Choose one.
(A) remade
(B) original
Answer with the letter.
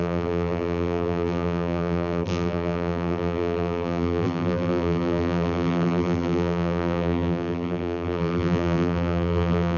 A